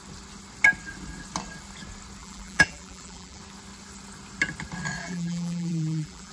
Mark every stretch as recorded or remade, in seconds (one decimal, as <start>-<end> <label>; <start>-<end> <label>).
0.0-2.2 recorded; 2.2-3.4 remade; 3.4-5.0 recorded; 5.0-6.3 remade